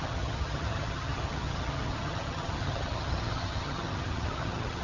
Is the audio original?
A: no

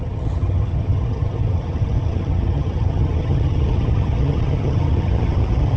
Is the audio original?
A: no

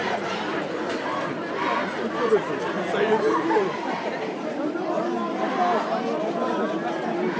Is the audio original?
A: yes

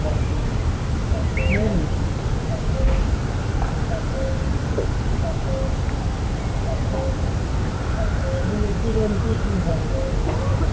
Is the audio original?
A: yes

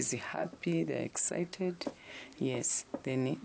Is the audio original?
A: yes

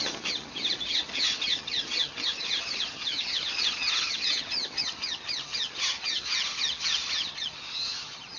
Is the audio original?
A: no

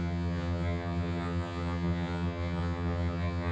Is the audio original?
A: no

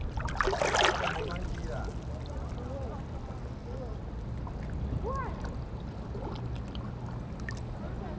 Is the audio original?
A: yes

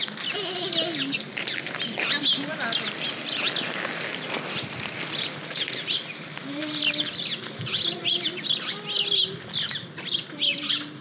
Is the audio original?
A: yes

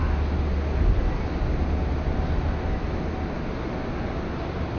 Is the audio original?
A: yes